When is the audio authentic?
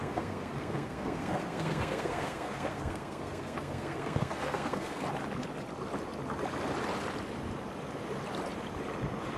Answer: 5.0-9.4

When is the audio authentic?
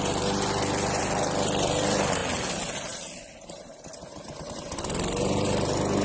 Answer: 0.0-6.0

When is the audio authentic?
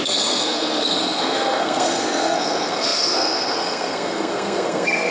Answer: none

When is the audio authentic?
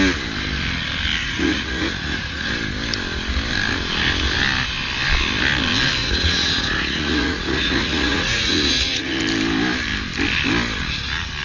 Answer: 0.0-1.2; 2.5-6.0; 9.2-11.4